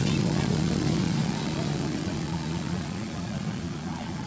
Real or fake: fake